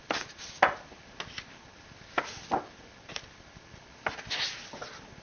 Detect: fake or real real